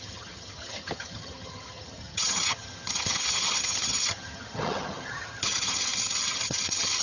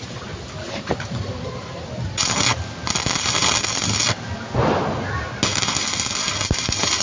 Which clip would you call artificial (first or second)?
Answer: first